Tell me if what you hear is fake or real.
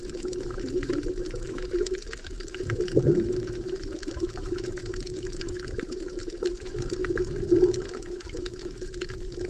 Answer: fake